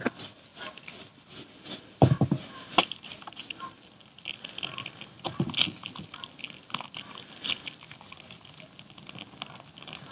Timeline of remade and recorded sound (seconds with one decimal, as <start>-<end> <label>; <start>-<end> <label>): 0.0-10.1 recorded